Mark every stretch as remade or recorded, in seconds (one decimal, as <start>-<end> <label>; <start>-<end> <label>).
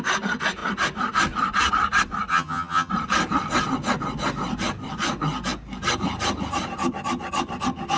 0.0-2.3 recorded; 2.3-2.9 remade; 2.9-8.0 recorded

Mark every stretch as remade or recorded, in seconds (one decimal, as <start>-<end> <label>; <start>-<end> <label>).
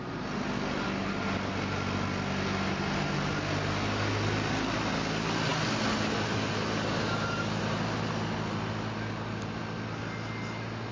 0.0-10.9 recorded